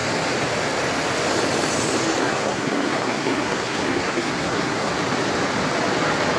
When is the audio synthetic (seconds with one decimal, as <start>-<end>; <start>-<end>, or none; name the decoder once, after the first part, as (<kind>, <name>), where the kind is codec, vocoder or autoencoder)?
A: 2.2-4.9 (codec, SNAC)